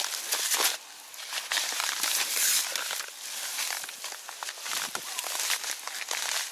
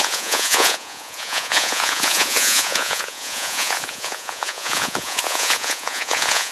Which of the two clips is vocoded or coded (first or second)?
second